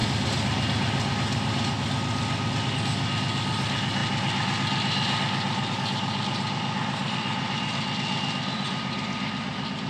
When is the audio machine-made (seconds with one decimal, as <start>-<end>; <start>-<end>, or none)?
none